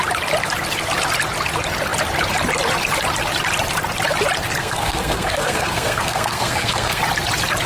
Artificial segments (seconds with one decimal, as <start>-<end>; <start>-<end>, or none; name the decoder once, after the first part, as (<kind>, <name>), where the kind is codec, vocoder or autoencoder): 4.6-7.0 (codec, SNAC)